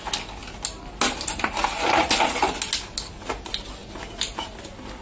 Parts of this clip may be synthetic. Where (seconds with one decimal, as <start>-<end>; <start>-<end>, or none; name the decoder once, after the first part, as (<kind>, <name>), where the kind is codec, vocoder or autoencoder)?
none